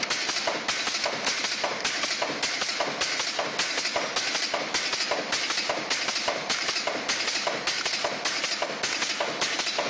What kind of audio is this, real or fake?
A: real